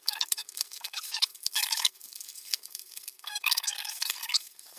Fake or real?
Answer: fake